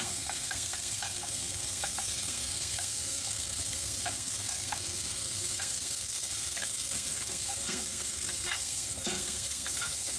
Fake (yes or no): yes